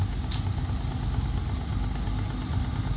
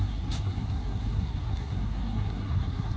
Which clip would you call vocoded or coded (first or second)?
second